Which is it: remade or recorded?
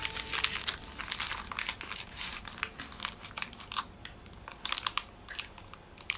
recorded